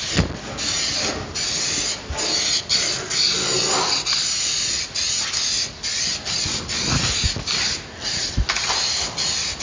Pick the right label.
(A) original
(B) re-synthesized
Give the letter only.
A